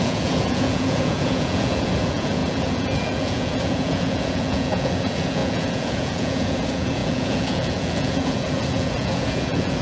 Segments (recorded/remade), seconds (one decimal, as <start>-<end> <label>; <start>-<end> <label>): 0.0-9.8 remade